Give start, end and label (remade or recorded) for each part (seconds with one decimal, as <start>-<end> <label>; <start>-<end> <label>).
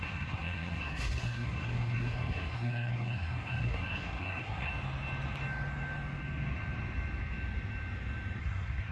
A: 0.0-4.7 remade; 4.7-8.4 recorded; 8.4-8.9 remade